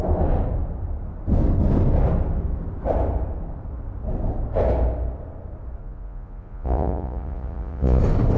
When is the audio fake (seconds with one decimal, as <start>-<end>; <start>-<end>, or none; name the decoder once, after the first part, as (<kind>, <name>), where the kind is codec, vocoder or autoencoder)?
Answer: 5.8-8.0 (vocoder, Vocos)